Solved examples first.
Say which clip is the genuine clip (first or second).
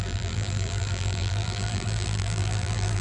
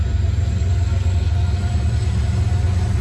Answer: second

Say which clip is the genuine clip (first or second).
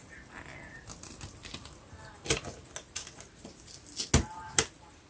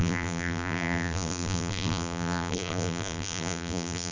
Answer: first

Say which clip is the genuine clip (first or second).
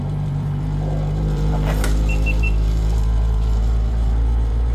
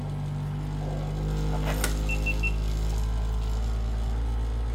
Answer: second